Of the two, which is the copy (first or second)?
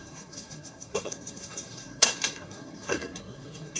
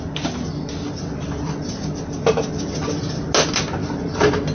first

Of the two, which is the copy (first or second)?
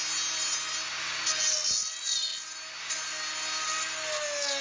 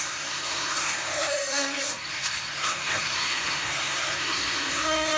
second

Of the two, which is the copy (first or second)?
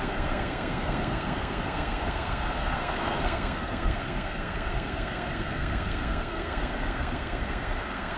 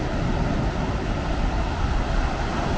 first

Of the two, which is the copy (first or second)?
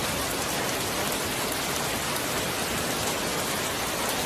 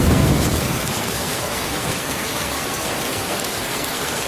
second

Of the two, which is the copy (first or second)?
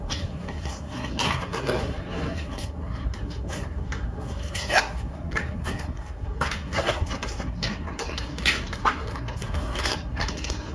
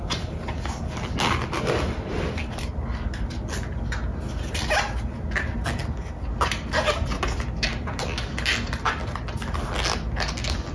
first